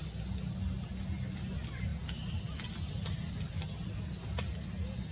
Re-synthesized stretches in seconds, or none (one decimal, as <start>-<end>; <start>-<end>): none